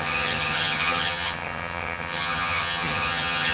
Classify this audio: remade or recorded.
remade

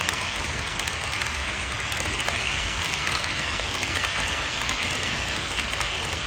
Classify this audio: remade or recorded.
remade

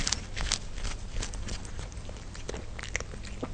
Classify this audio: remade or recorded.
recorded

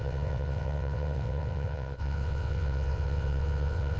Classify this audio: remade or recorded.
remade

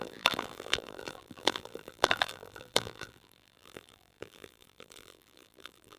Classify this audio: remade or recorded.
remade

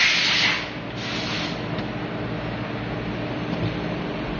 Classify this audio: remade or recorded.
recorded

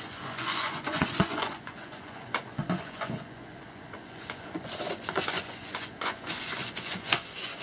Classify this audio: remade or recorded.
remade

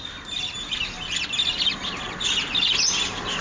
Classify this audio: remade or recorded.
recorded